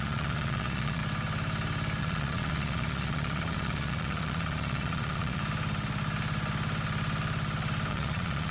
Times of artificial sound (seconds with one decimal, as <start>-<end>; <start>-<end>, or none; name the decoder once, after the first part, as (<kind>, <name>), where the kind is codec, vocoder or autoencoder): 0.0-1.0 (vocoder, Vocos); 2.0-5.4; 7.9-8.5